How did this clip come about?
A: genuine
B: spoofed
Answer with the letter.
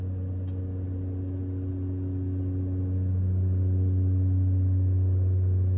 A